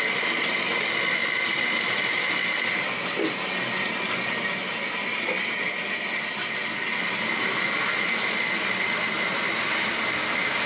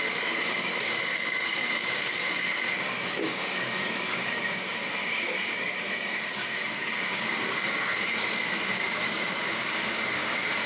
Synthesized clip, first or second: second